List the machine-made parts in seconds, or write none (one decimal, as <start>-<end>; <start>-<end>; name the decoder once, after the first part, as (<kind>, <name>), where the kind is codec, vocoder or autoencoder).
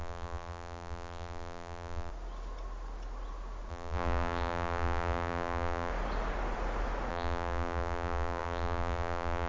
0.0-2.1 (vocoder, BigVGAN v2); 3.7-5.9; 7.1-9.5